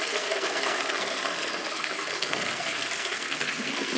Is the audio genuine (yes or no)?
no